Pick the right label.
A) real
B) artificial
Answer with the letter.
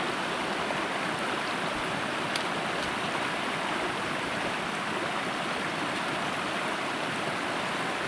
A